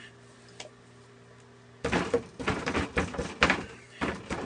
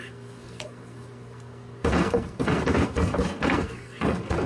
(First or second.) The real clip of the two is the first